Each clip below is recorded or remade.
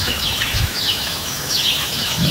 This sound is remade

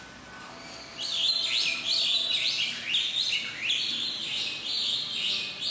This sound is recorded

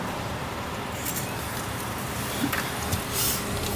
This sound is recorded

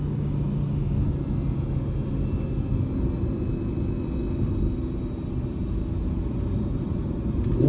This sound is recorded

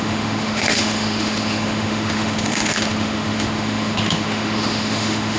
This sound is remade